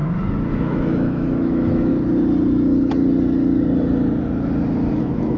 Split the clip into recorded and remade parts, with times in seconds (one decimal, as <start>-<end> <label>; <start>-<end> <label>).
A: 0.0-0.5 recorded; 0.5-1.9 remade; 1.9-5.0 recorded; 5.0-5.4 remade